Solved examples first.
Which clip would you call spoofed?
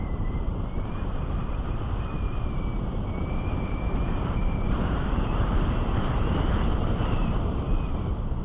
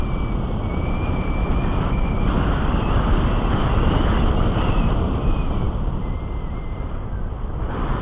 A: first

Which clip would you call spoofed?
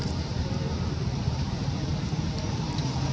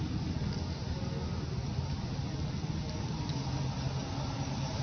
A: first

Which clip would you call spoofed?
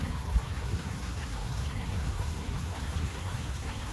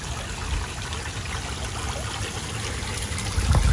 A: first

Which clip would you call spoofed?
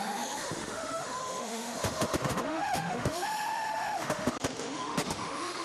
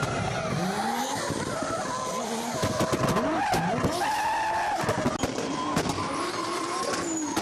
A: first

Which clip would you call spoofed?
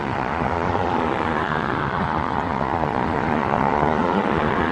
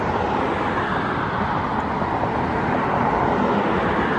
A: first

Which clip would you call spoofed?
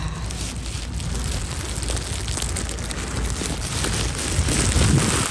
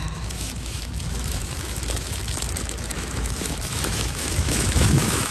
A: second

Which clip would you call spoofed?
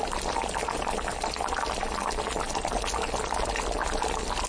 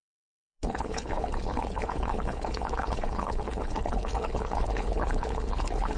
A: second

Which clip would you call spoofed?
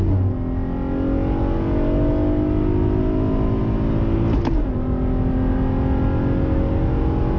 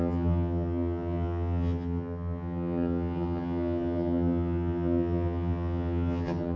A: second